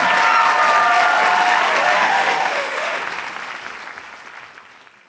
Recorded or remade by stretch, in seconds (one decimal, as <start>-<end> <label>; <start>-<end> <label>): 0.0-2.0 recorded; 2.0-3.0 remade; 3.0-5.1 recorded